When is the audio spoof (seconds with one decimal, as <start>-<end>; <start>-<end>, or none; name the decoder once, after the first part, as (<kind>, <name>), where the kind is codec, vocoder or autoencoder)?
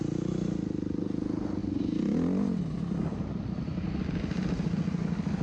none